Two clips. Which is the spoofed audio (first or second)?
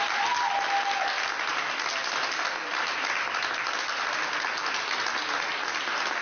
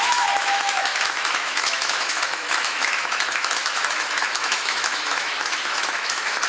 second